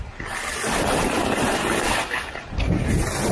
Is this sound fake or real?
real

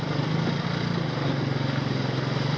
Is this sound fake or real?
real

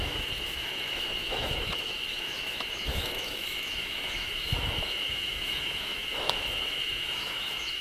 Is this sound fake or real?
fake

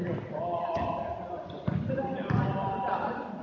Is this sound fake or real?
real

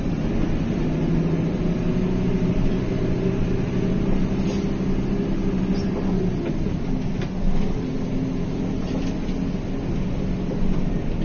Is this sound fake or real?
real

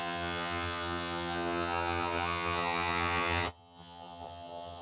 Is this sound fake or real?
fake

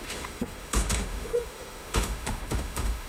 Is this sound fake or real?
fake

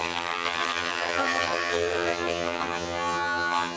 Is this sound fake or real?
fake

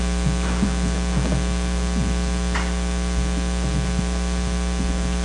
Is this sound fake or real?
real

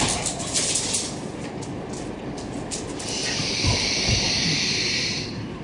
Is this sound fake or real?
real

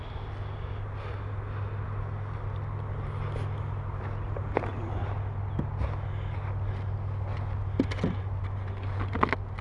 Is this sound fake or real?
real